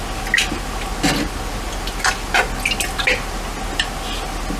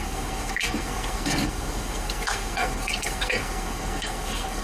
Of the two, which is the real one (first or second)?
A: first